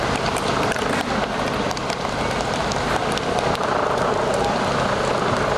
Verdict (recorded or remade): recorded